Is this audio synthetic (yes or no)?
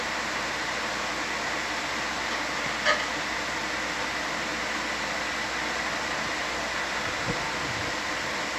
no